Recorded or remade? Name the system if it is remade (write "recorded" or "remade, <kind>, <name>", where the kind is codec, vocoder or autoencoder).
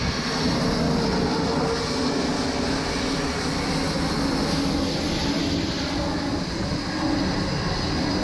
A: recorded